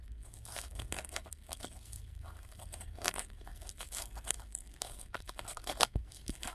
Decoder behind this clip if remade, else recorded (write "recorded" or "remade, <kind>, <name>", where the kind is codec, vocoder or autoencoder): remade, codec, SNAC